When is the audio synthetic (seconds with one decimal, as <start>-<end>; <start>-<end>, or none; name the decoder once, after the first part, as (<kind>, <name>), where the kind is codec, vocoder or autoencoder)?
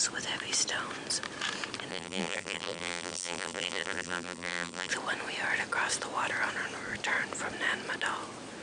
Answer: 1.9-4.9 (vocoder, BigVGAN v2)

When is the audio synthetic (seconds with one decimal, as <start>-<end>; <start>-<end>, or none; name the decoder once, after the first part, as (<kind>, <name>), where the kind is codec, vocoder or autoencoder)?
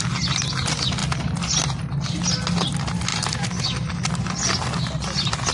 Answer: 3.1-4.1 (vocoder, BigVGAN v2)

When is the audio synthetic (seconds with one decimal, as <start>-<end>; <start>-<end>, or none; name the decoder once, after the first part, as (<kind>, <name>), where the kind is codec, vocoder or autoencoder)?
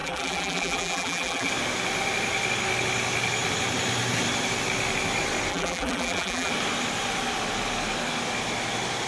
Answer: 0.0-1.5 (vocoder, BigVGAN v2); 5.5-6.5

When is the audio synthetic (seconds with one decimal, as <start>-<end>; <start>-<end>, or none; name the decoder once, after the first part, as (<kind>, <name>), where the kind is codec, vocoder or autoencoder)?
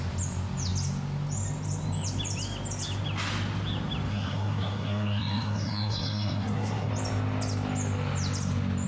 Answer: 4.1-6.9 (codec, SNAC)